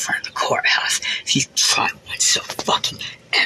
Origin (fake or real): real